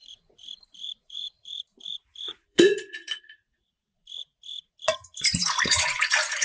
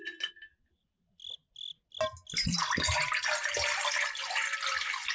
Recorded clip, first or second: second